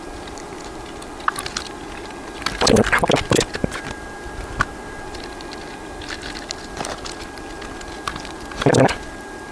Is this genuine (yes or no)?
yes